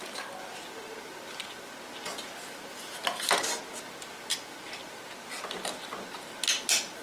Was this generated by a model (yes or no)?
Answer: no